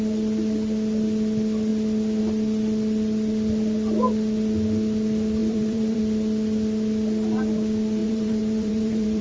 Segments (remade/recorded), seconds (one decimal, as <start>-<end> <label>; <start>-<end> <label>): 0.0-5.4 recorded; 5.4-6.0 remade; 6.0-8.0 recorded; 8.0-9.2 remade